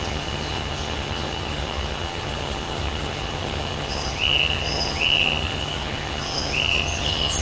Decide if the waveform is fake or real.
fake